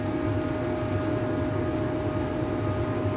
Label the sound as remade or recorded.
recorded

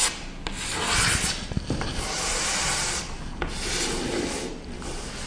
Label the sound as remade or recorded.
recorded